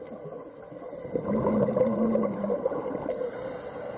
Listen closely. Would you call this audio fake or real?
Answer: real